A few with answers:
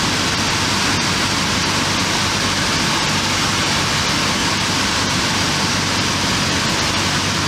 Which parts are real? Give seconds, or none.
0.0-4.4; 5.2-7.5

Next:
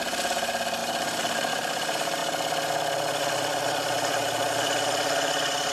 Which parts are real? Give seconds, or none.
2.2-5.7

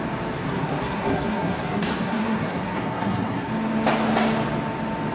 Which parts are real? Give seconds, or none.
0.0-0.4; 3.5-5.1

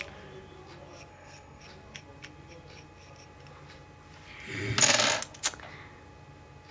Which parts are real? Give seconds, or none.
0.0-1.1; 1.6-6.7